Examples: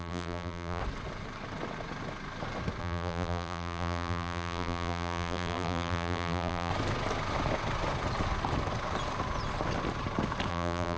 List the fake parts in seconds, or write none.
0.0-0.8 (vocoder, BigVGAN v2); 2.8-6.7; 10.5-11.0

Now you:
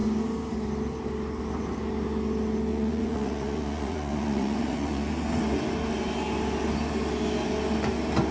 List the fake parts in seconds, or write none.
2.7-5.1 (vocoder, Vocos)

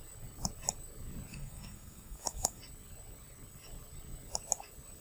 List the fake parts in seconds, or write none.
1.3-2.6 (codec, SNAC)

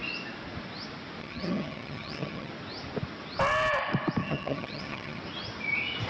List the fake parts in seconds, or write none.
1.2-2.5 (vocoder, HiFi-GAN); 4.2-5.2

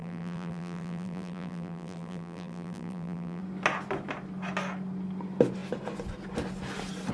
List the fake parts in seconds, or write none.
0.0-3.4 (vocoder, BigVGAN v2)